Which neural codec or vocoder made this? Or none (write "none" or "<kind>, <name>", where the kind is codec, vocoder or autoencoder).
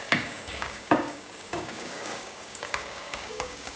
codec, DAC